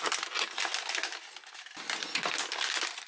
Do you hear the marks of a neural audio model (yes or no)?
no